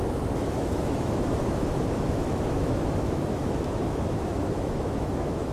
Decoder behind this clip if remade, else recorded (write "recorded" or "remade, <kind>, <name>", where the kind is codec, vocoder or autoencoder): remade, autoencoder, DAC-VAE